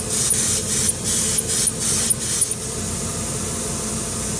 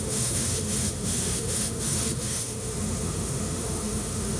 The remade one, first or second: second